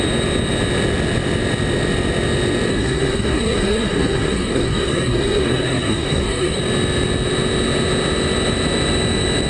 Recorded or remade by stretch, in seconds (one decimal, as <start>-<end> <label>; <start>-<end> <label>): 0.0-2.7 recorded; 2.7-6.6 remade; 6.6-9.5 recorded